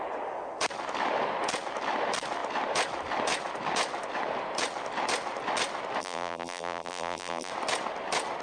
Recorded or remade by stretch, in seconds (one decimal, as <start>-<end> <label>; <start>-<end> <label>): 0.0-6.0 recorded; 6.0-7.5 remade; 7.5-8.4 recorded